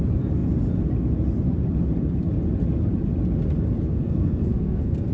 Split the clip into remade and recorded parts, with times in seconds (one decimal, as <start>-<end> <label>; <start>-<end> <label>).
0.0-3.9 recorded; 3.9-5.1 remade